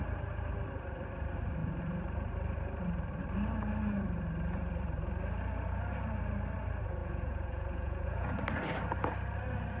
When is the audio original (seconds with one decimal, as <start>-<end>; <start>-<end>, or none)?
0.0-7.0; 8.4-9.8